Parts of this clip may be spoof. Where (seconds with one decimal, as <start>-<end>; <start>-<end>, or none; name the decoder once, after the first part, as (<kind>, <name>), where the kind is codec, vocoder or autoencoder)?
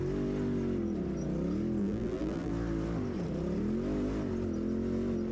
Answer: 1.8-2.5 (vocoder, BigVGAN v2)